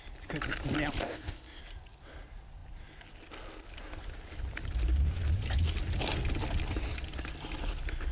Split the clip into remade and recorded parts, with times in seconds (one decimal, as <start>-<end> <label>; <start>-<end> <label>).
0.0-1.0 recorded; 1.0-1.6 remade; 1.6-8.1 recorded